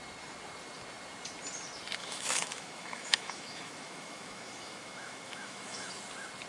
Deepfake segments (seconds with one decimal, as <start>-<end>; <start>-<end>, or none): 2.0-5.9